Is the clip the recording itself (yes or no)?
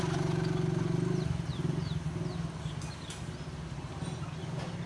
yes